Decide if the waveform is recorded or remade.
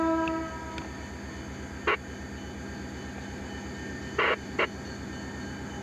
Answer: recorded